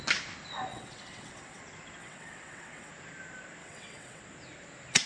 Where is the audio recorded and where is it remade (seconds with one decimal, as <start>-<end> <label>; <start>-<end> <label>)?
0.0-0.7 recorded; 0.7-1.6 remade; 1.6-2.0 recorded; 2.0-2.9 remade; 2.9-3.6 recorded; 3.6-4.2 remade; 4.2-5.1 recorded